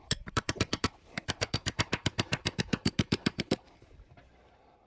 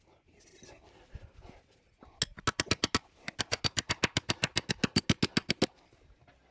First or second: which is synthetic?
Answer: first